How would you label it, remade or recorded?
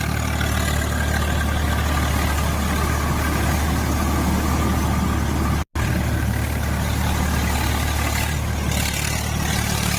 recorded